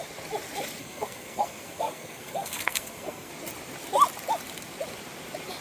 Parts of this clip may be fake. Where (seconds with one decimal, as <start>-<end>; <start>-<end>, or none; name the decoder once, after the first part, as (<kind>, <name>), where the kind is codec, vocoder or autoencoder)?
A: 0.8-3.3 (codec, SNAC)